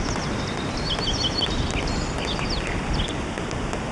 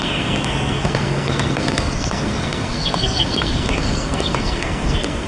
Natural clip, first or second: first